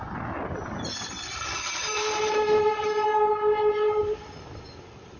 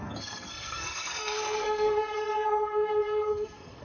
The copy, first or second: second